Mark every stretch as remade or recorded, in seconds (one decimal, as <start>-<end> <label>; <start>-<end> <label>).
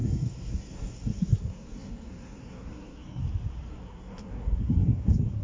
0.0-3.2 remade; 3.2-3.7 recorded; 3.7-5.4 remade